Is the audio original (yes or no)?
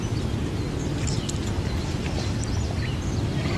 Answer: yes